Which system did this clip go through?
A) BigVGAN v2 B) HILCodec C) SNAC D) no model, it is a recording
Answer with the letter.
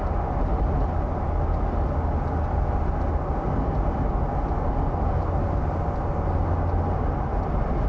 D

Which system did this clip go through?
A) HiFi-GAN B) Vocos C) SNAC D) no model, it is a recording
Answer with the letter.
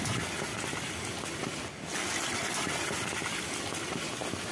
D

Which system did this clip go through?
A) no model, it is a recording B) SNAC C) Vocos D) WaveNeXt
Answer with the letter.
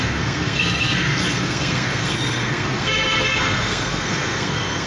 B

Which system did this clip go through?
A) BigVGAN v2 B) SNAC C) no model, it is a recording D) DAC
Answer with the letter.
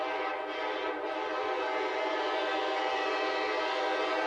C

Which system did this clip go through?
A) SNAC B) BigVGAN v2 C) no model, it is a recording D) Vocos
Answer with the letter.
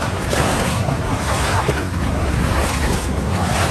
A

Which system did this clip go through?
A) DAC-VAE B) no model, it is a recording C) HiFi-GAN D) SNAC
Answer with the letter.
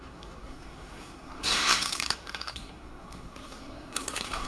D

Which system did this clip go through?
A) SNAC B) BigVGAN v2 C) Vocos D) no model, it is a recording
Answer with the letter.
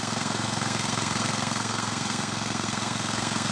A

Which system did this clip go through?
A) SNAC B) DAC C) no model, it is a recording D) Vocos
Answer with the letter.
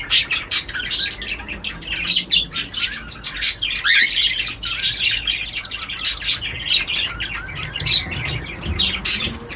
C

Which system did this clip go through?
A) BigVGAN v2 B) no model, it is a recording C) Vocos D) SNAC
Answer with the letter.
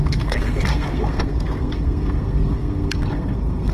D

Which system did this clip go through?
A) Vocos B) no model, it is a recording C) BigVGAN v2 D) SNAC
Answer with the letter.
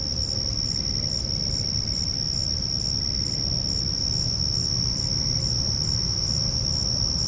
B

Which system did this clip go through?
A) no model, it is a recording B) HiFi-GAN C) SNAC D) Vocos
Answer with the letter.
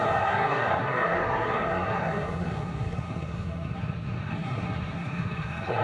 C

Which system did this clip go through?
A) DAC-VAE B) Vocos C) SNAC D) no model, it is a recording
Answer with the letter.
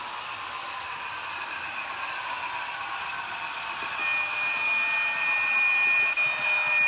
D